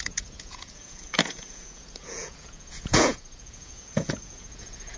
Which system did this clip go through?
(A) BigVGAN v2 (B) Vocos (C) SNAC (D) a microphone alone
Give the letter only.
B